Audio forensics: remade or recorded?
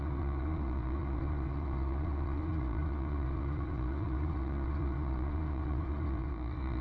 remade